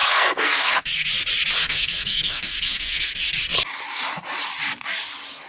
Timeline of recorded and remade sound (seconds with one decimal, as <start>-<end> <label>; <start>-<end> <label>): 0.0-0.8 remade; 0.8-1.6 recorded; 1.6-3.1 remade; 3.1-5.5 recorded